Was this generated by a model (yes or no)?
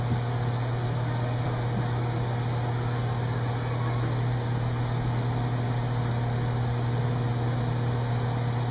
no